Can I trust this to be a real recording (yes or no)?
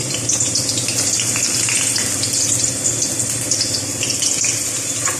yes